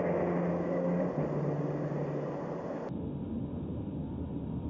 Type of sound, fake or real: real